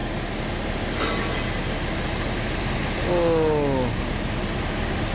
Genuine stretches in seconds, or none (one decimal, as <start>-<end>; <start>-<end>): 0.0-5.1